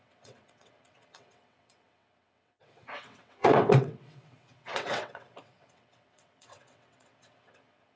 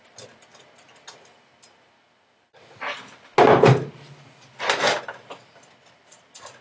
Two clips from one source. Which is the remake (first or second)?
first